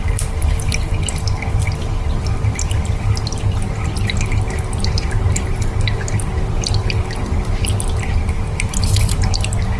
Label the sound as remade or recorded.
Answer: recorded